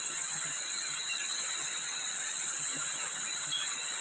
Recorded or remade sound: remade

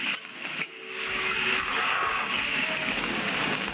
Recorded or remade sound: remade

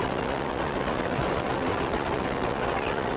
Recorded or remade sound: remade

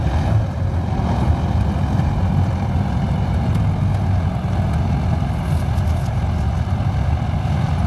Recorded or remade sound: recorded